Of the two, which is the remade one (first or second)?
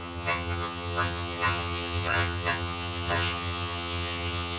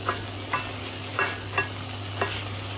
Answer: first